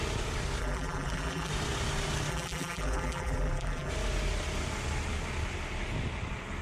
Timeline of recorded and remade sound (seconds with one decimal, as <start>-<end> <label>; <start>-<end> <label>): 0.0-0.6 recorded; 0.6-1.5 remade; 1.5-2.3 recorded; 2.3-3.9 remade; 3.9-6.6 recorded